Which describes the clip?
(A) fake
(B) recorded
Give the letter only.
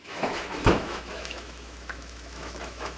A